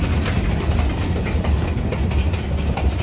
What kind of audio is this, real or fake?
real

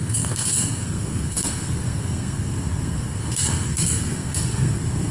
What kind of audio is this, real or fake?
fake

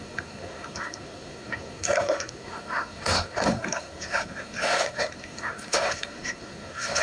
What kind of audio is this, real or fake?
fake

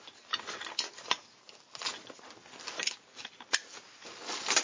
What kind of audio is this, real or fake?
real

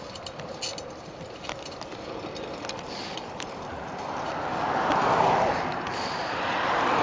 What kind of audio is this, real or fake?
real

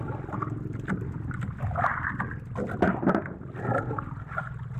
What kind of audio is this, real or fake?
real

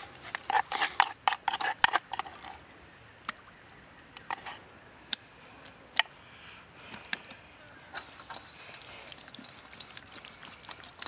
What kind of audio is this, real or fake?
real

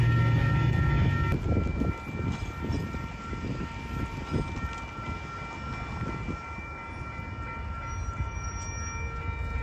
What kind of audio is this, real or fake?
real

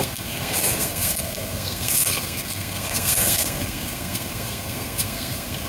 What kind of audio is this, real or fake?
fake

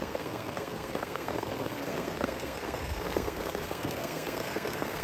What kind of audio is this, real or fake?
fake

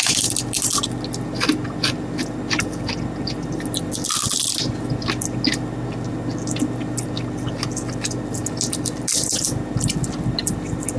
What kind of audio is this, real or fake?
real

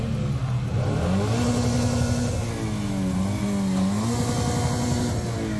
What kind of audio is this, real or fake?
real